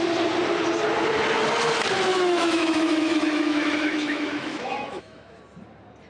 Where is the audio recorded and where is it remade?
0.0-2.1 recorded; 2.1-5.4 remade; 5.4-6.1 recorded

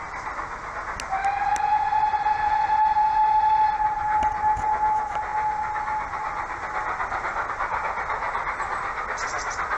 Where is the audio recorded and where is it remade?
0.0-9.8 recorded

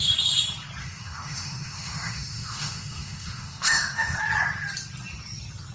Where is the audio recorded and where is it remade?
0.0-0.8 recorded; 0.8-4.2 remade; 4.2-5.7 recorded

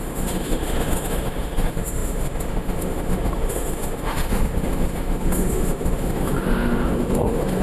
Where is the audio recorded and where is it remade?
0.0-7.6 remade

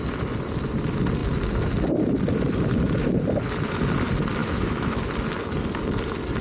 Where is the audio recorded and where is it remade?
0.0-4.4 recorded; 4.4-5.0 remade; 5.0-6.4 recorded